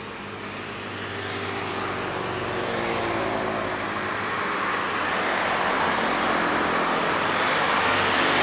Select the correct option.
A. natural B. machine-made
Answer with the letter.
A